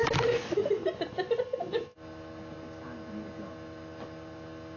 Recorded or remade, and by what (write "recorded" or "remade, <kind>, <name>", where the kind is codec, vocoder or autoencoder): recorded